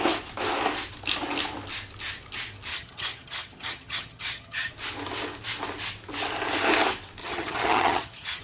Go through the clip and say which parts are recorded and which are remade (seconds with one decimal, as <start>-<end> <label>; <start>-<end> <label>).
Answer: 0.0-2.7 recorded; 2.7-4.7 remade; 4.7-7.2 recorded; 7.2-8.4 remade